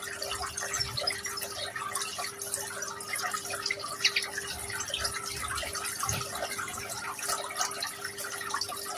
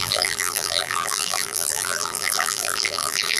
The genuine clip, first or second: first